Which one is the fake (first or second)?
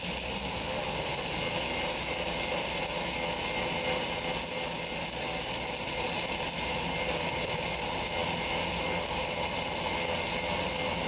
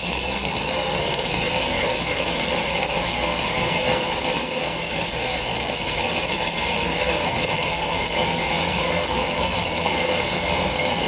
second